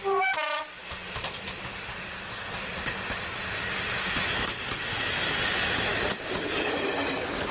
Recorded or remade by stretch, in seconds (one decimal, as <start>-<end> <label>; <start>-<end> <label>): 0.0-7.5 recorded